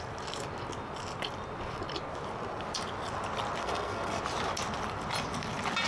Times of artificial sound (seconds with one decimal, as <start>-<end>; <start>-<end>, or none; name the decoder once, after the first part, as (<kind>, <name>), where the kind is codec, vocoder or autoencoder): 3.6-4.2 (codec, SNAC)